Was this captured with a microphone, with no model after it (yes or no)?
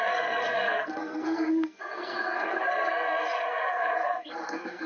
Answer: no